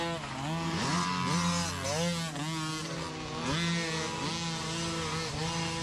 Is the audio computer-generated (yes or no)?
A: no